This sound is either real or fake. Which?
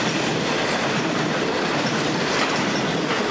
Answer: real